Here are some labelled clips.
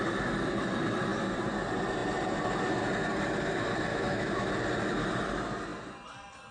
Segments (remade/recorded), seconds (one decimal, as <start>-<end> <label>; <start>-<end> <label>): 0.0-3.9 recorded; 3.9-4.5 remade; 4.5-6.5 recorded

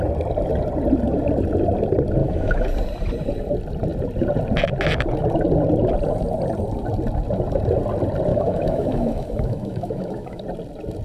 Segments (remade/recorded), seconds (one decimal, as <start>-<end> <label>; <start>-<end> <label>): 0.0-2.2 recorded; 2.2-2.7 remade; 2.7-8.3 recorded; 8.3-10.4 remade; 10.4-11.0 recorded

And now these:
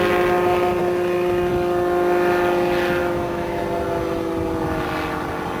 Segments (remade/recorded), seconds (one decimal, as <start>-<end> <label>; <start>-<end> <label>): 0.0-3.0 recorded; 3.0-3.6 remade; 3.6-5.6 recorded